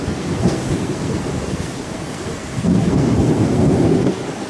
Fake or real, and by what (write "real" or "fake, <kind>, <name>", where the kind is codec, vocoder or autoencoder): fake, codec, SNAC